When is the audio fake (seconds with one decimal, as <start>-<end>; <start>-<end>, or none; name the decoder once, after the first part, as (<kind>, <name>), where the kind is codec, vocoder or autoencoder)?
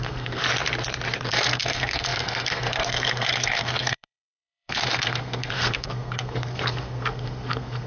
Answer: 0.0-0.4 (codec, SNAC); 1.3-7.9